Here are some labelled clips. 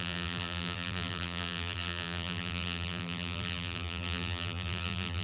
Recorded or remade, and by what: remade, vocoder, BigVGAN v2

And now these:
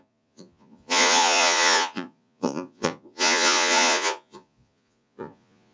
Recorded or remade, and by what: remade, vocoder, Vocos